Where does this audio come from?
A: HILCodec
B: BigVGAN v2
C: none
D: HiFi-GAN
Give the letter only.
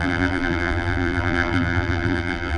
B